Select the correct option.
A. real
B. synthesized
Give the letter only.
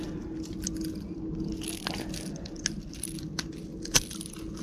A